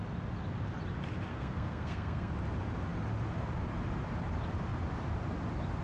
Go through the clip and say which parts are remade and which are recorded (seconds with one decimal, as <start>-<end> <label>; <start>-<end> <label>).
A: 0.0-1.3 recorded; 1.3-2.3 remade; 2.3-5.8 recorded

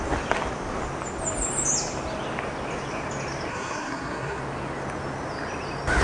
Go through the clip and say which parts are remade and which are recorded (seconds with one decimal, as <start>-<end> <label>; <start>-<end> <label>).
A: 0.0-3.5 recorded; 3.5-4.4 remade; 4.4-6.0 recorded

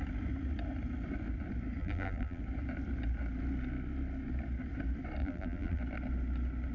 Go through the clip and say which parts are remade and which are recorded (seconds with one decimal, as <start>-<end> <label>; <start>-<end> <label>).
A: 0.0-1.8 recorded; 1.8-2.4 remade; 2.4-5.2 recorded; 5.2-5.8 remade; 5.8-6.7 recorded

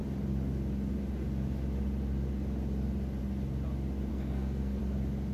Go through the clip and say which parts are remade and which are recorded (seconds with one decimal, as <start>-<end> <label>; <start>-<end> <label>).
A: 0.0-4.1 recorded; 4.1-4.8 remade; 4.8-5.3 recorded

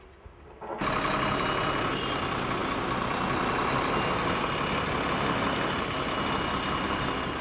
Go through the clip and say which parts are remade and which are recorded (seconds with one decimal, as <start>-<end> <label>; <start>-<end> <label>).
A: 0.0-7.4 recorded

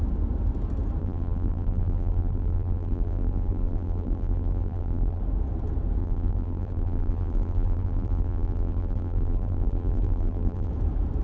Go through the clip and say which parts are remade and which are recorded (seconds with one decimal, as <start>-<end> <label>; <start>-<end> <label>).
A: 0.0-1.0 recorded; 1.0-5.2 remade; 5.2-6.0 recorded; 6.0-10.7 remade; 10.7-11.2 recorded

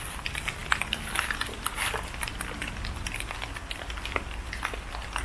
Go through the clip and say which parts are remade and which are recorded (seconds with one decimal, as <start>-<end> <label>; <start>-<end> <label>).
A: 0.0-5.2 recorded